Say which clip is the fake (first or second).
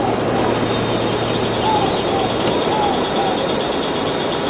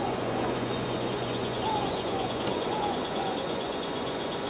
second